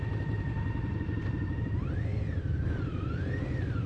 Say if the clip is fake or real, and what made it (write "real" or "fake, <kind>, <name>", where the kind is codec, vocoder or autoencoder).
fake, vocoder, BigVGAN v2